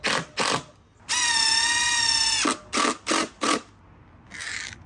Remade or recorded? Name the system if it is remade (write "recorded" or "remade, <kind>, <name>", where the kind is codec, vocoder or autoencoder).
recorded